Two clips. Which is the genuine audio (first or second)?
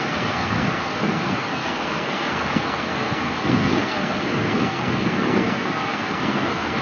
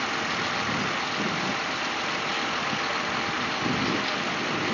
second